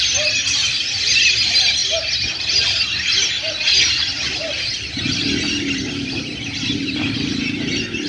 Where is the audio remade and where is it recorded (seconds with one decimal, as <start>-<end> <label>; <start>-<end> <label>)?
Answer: 0.0-8.1 recorded